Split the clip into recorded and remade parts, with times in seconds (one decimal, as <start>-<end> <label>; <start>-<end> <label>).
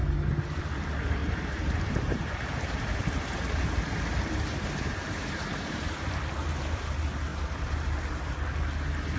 0.0-1.2 recorded; 1.2-6.1 remade; 6.1-7.3 recorded; 7.3-8.3 remade; 8.3-9.2 recorded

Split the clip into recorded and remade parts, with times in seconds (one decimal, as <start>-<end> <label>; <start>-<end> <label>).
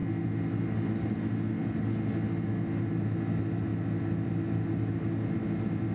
0.0-5.9 recorded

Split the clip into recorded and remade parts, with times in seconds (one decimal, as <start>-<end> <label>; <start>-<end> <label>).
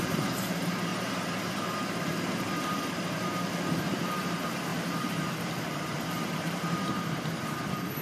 0.0-8.0 remade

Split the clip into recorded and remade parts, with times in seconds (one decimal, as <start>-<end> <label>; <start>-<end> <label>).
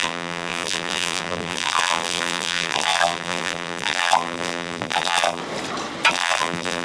0.0-5.4 remade; 5.4-6.1 recorded; 6.1-6.8 remade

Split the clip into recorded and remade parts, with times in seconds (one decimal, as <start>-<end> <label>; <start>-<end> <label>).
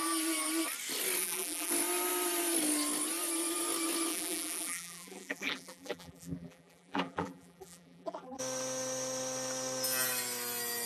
0.0-1.2 recorded; 1.2-1.7 remade; 1.7-4.1 recorded; 4.1-8.4 remade; 8.4-10.9 recorded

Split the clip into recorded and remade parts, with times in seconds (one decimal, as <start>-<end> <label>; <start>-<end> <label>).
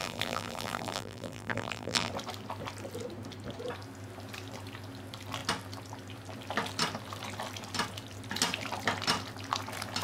0.0-2.1 remade; 2.1-10.0 recorded